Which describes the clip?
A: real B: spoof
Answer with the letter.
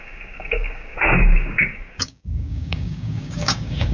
B